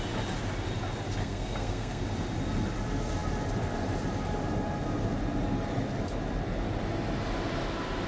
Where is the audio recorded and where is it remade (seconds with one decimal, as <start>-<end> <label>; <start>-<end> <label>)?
0.0-1.2 recorded; 1.2-2.0 remade; 2.0-8.1 recorded